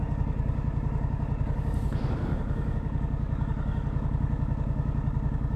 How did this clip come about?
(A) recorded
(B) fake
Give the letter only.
B